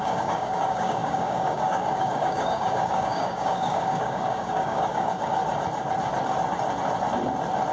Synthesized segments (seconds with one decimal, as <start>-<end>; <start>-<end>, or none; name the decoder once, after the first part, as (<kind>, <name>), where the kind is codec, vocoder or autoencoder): 0.0-5.4 (codec, DAC)